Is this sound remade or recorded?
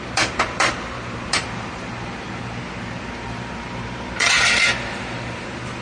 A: remade